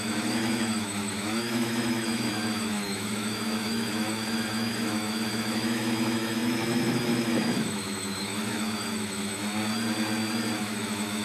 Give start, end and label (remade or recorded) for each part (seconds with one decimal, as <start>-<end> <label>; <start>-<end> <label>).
0.0-9.4 remade; 9.4-10.6 recorded; 10.6-11.2 remade